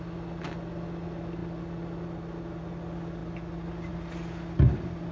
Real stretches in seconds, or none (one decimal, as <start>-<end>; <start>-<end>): 0.0-5.1